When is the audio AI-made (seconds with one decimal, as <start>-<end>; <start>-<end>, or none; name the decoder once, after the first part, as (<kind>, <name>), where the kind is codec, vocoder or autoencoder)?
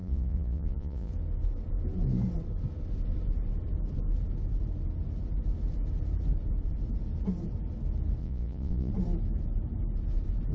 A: 0.0-1.1 (vocoder, Vocos); 8.2-8.9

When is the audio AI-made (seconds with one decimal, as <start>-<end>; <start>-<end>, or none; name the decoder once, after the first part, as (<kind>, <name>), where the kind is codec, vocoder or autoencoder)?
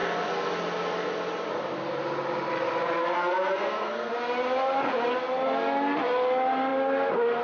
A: 3.0-4.1 (codec, SNAC)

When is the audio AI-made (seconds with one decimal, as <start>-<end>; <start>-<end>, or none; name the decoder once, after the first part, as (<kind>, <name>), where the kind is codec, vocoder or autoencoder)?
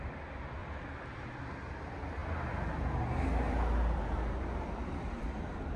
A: 0.6-1.4 (vocoder, BigVGAN v2); 2.2-3.0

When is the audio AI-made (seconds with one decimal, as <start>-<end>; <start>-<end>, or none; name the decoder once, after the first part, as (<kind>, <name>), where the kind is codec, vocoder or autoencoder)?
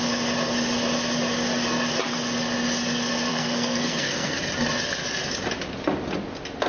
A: 3.3-4.4 (codec, SNAC)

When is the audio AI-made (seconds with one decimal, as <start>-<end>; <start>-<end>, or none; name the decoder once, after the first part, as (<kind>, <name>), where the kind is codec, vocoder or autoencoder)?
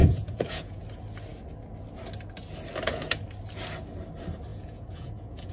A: 0.0-0.8 (vocoder, Vocos); 4.5-5.5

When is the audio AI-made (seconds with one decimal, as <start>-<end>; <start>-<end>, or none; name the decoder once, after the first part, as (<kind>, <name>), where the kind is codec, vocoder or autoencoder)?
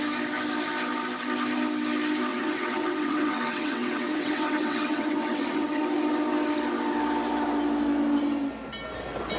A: 2.3-5.8 (vocoder, WaveNeXt)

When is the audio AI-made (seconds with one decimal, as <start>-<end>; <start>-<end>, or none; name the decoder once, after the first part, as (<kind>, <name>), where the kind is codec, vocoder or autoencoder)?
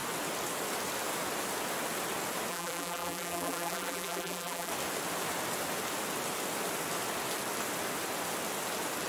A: 2.5-4.7 (vocoder, BigVGAN v2)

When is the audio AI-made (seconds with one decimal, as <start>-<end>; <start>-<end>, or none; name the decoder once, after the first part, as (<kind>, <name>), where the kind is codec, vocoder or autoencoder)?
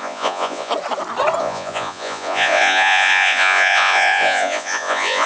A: 0.0-0.7 (vocoder, Vocos); 1.4-5.3